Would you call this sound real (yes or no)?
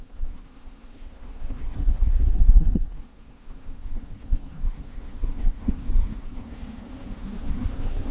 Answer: no